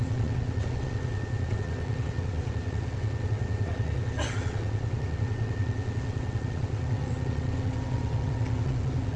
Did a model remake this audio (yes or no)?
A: yes